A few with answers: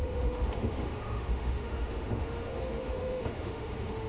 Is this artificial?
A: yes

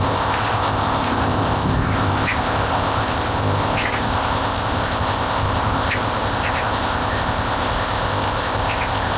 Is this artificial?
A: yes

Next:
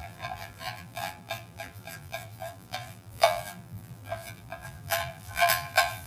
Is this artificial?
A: yes